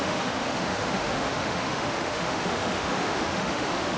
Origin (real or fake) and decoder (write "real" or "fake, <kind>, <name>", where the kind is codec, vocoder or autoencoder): fake, autoencoder, DAC-VAE